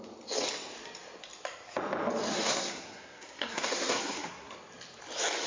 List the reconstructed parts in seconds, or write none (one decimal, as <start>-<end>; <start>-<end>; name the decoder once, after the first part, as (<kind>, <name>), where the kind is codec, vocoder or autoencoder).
2.3-4.5 (codec, SNAC)